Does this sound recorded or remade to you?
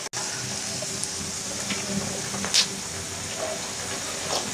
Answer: recorded